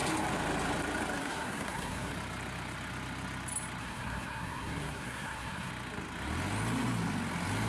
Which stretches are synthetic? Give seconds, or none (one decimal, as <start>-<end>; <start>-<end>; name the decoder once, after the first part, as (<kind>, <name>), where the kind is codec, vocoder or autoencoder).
1.2-2.1 (codec, SNAC); 3.8-5.7